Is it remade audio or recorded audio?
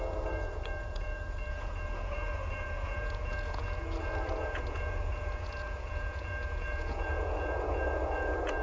remade